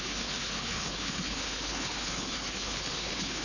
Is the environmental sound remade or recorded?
remade